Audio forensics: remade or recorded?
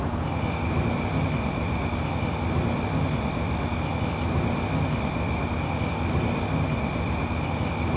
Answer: recorded